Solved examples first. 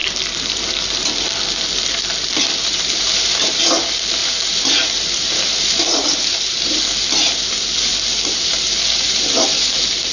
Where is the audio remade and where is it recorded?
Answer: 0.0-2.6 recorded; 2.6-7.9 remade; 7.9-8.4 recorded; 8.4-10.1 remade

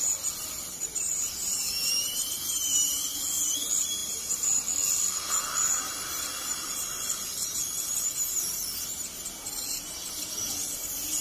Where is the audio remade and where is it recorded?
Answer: 0.0-0.7 recorded; 0.7-3.2 remade; 3.2-11.2 recorded

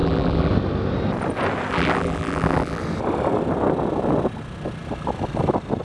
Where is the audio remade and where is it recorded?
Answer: 0.0-0.5 remade; 0.5-1.7 recorded; 1.7-2.8 remade; 2.8-5.8 recorded

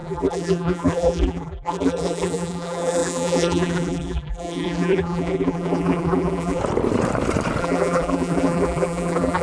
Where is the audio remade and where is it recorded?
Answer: 0.0-6.6 remade; 6.6-7.6 recorded; 7.6-9.4 remade

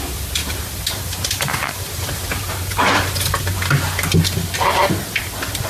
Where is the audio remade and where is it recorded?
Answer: 0.0-0.4 recorded; 0.4-3.4 remade; 3.4-5.7 recorded

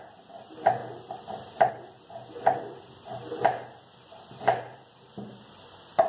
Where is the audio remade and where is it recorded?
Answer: 0.0-6.1 recorded

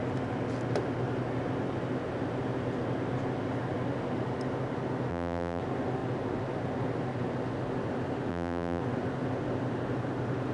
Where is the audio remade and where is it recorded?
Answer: 0.0-5.1 recorded; 5.1-5.6 remade; 5.6-8.3 recorded; 8.3-8.8 remade; 8.8-10.5 recorded